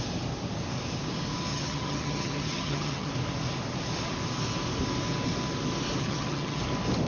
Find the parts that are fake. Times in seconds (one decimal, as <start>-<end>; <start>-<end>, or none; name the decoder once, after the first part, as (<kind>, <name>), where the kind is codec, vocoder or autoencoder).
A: 1.5-3.1 (vocoder, HiFi-GAN); 6.0-6.6